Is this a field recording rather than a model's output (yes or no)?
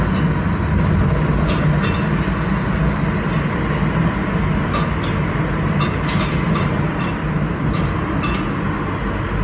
yes